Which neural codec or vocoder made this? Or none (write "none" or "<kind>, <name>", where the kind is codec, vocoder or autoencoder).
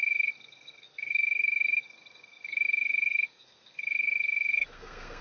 codec, SNAC